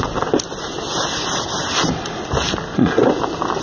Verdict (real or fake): real